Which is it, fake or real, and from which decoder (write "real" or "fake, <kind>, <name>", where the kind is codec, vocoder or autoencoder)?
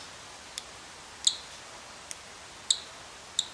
real